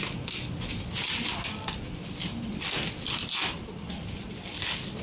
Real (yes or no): yes